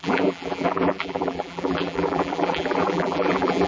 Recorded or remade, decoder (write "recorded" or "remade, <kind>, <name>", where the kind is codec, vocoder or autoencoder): remade, vocoder, BigVGAN v2